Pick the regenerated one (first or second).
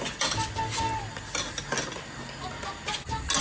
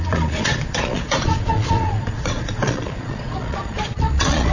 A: second